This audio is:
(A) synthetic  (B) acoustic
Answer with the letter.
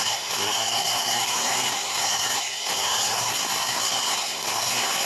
A